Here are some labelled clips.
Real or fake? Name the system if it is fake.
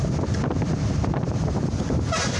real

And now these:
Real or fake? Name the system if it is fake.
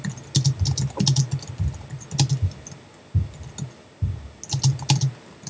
real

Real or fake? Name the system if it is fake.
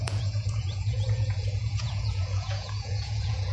fake, vocoder, Vocos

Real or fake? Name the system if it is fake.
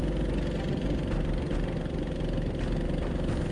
real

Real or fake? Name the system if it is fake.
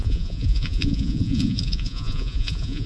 fake, vocoder, Vocos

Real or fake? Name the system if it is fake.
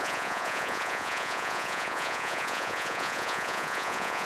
fake, vocoder, Vocos